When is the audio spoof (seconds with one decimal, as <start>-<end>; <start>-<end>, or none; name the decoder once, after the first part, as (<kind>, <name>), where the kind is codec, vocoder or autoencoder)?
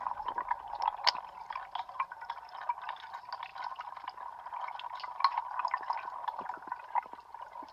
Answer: none